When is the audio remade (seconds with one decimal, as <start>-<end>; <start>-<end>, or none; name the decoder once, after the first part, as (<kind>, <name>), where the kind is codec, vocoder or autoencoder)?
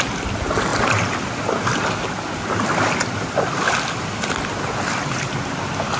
none